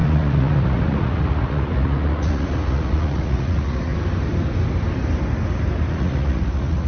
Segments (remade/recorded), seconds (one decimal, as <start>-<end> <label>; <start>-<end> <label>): 0.0-3.9 remade; 3.9-5.9 recorded; 5.9-6.9 remade